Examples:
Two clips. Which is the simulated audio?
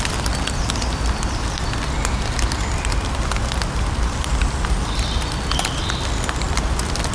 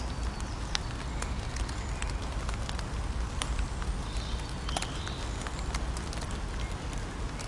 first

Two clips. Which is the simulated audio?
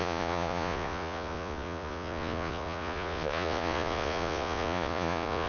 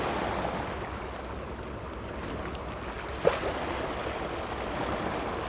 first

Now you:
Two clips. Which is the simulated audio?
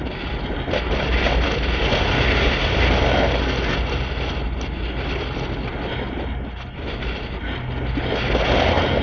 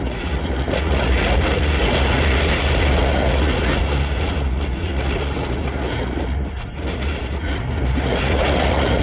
second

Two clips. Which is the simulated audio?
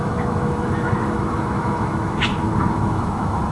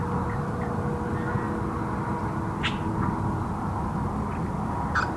first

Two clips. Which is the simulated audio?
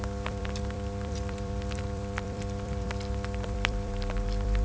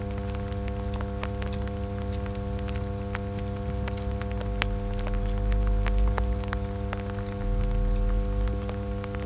first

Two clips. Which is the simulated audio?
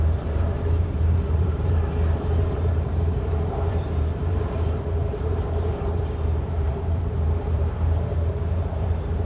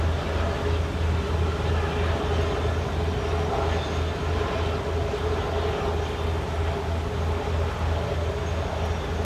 first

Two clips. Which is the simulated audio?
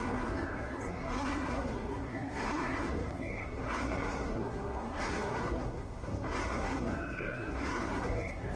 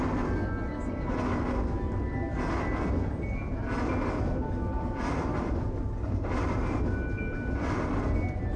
first